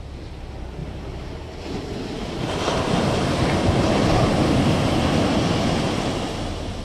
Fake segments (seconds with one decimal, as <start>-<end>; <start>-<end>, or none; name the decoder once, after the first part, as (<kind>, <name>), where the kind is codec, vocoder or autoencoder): 0.8-4.9 (vocoder, BigVGAN v2)